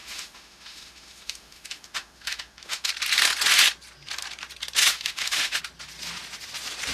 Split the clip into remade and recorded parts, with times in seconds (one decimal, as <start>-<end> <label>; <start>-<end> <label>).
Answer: 0.0-2.9 remade; 2.9-4.8 recorded; 4.8-5.6 remade; 5.6-6.9 recorded